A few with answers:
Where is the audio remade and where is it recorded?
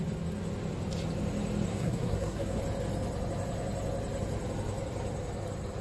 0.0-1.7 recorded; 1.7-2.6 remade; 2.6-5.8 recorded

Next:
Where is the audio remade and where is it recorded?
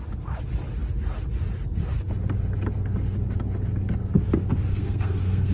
0.0-4.7 recorded; 4.7-5.5 remade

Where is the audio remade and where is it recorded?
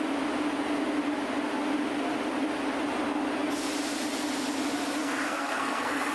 0.0-5.0 recorded; 5.0-6.1 remade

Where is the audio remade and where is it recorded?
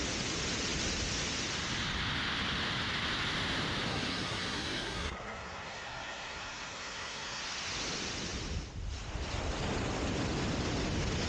0.0-3.9 recorded; 3.9-7.4 remade; 7.4-11.3 recorded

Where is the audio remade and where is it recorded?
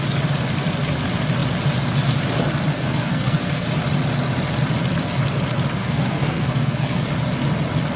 0.0-2.7 recorded; 2.7-3.7 remade; 3.7-5.8 recorded; 5.8-7.1 remade; 7.1-8.0 recorded